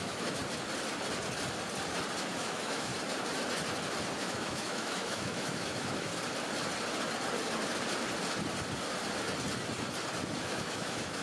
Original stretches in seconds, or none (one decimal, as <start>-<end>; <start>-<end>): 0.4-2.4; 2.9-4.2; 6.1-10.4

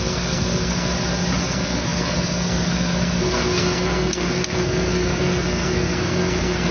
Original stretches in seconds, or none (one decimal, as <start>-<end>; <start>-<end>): 0.9-1.4

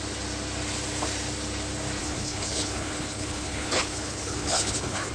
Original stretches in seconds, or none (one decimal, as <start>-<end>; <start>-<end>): 0.0-2.0

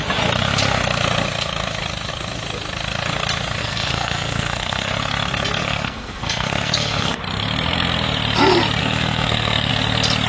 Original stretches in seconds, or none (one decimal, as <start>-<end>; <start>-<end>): 0.0-3.6; 4.9-5.6; 7.2-8.8; 9.7-10.3